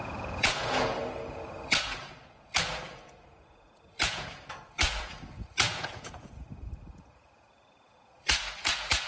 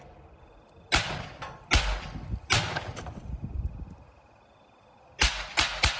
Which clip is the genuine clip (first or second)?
second